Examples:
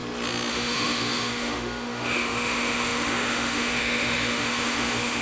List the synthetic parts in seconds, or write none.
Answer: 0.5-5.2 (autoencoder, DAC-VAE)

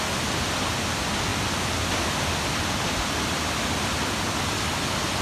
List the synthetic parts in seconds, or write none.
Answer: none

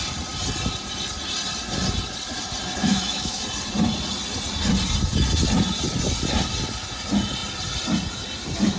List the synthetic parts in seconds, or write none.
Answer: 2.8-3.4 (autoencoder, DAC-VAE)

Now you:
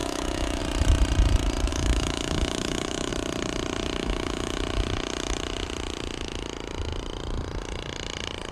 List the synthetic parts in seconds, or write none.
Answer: 0.0-0.6 (autoencoder, DAC-VAE); 1.7-3.1; 4.0-4.6